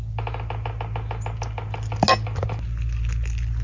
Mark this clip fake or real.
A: real